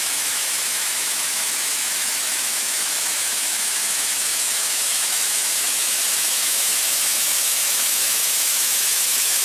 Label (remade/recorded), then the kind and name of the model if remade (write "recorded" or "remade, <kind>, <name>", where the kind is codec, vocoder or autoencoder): remade, autoencoder, DAC-VAE